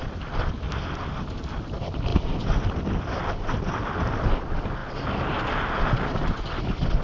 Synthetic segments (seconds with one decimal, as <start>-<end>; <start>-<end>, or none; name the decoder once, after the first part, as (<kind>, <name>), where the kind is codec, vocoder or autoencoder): none